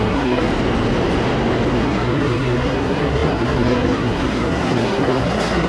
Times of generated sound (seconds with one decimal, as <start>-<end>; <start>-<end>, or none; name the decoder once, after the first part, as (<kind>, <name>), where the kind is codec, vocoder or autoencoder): 0.0-0.5 (codec, SNAC); 1.7-5.7